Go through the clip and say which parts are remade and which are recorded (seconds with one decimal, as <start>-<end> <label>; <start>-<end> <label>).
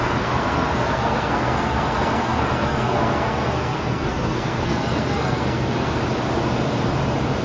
0.0-6.0 remade; 6.0-7.4 recorded